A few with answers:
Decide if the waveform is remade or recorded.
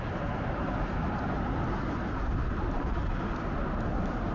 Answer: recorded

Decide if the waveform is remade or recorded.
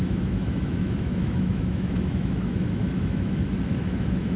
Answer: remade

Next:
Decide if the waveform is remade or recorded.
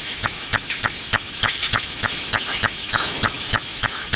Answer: remade